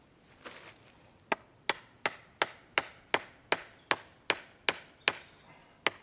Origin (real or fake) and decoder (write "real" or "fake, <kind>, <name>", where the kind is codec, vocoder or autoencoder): real